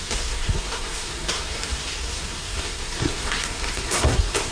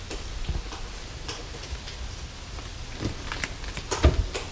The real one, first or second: second